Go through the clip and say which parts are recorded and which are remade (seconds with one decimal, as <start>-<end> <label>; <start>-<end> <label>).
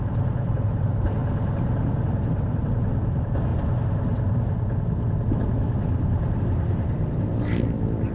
0.0-1.2 remade; 1.2-2.7 recorded; 2.7-3.5 remade; 3.5-6.4 recorded; 6.4-8.1 remade